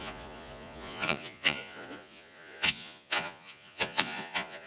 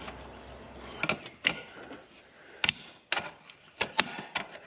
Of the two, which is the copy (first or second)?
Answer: first